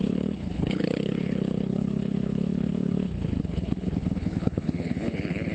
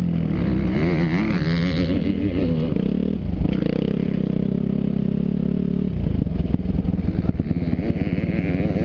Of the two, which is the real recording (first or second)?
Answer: second